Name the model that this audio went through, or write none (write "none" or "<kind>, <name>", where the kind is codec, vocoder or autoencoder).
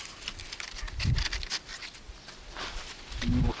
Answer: none